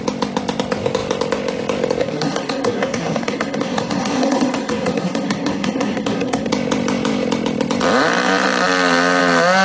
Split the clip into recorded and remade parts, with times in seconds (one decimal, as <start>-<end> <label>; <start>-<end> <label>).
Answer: 0.0-2.0 recorded; 2.0-6.5 remade; 6.5-9.6 recorded

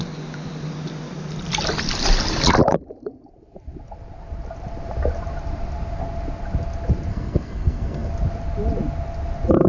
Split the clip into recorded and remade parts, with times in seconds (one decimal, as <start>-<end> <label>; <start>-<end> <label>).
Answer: 0.0-7.1 recorded; 7.1-8.1 remade; 8.1-9.7 recorded

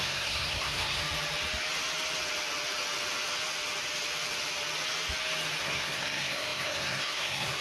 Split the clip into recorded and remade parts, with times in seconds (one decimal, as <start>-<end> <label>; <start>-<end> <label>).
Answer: 0.0-1.0 remade; 1.0-5.6 recorded; 5.6-7.6 remade

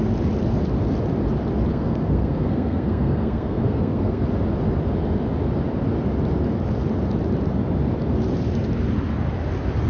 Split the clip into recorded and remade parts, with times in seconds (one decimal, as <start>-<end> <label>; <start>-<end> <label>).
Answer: 0.0-1.7 recorded; 1.7-4.2 remade; 4.2-9.9 recorded

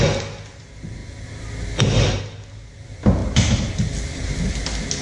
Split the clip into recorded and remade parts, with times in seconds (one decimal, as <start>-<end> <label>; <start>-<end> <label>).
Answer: 0.0-5.0 recorded

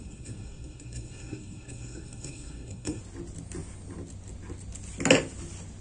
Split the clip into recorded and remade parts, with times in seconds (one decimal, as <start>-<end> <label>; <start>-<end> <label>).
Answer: 0.0-3.0 remade; 3.0-5.8 recorded